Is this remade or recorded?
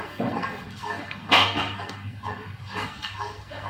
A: remade